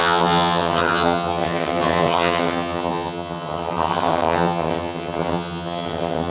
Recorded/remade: remade